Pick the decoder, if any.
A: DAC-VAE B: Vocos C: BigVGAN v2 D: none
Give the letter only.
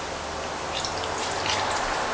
D